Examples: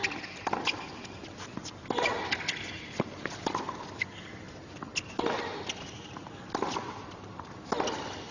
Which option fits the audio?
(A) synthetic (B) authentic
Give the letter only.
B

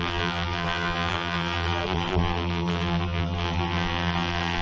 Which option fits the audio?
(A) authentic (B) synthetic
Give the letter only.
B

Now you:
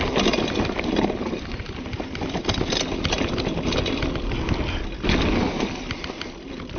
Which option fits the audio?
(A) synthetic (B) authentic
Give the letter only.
B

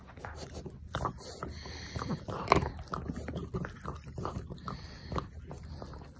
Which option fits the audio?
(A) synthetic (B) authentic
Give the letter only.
B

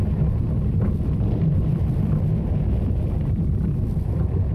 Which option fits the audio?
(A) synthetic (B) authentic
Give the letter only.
A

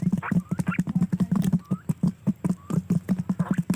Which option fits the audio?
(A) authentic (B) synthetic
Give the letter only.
A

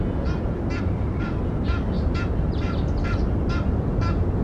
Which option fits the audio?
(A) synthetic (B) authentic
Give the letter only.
B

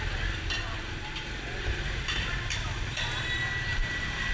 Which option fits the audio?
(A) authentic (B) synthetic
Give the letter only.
A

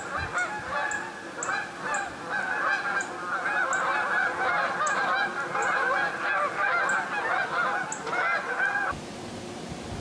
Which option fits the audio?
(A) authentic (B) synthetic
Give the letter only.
A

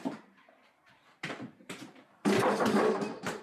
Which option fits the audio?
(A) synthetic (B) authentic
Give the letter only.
A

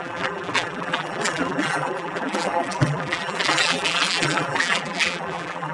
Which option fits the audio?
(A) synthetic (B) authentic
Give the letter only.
A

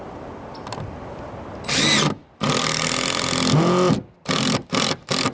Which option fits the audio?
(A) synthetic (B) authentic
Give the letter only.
B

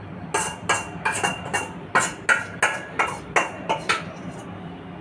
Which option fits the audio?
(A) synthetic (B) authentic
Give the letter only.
B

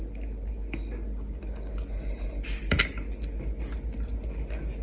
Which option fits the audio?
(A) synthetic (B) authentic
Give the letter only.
B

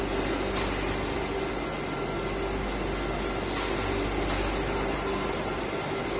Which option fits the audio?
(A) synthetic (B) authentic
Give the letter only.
B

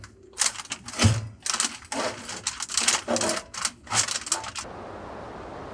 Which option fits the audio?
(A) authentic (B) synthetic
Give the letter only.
A